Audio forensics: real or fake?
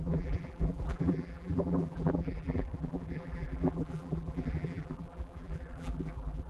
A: fake